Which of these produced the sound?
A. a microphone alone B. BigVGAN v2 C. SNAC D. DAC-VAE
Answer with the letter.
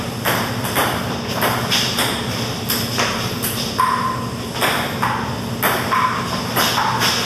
A